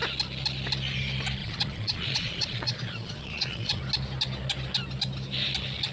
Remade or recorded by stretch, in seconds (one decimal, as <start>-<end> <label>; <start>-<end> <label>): 0.0-1.4 recorded; 1.4-3.8 remade; 3.8-5.9 recorded